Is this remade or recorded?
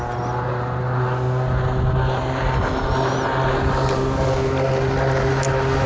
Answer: recorded